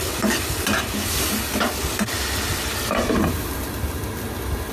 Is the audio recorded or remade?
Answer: recorded